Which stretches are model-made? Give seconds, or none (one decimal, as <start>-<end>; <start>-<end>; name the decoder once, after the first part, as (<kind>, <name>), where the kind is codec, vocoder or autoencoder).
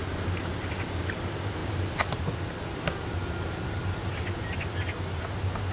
none